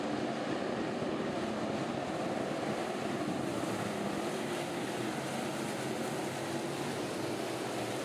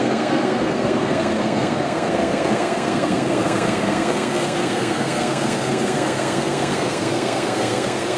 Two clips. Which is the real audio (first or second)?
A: first